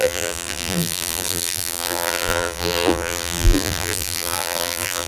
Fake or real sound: fake